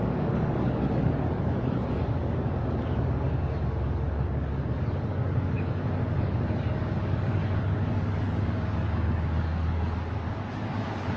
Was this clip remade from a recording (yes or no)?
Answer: yes